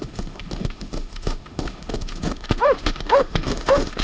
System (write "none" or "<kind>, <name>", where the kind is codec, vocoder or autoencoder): autoencoder, DAC-VAE